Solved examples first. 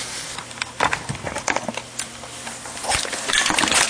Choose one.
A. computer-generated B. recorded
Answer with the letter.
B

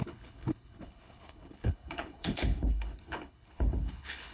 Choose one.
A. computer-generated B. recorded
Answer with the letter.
A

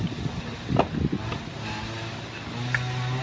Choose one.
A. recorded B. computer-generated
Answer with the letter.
A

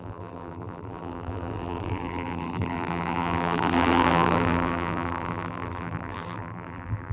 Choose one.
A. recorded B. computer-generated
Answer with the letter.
B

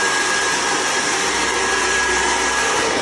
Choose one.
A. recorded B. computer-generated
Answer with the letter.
A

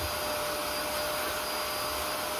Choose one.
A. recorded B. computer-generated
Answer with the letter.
A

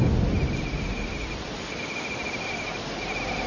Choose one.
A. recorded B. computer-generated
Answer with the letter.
A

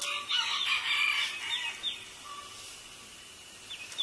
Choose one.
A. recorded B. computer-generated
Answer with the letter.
A